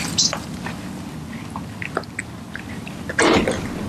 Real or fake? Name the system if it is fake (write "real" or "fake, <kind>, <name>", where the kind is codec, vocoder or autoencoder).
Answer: real